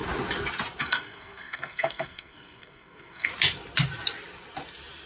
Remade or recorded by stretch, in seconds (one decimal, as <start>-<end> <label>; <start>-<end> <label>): 0.0-0.8 recorded; 0.8-3.3 remade; 3.3-5.1 recorded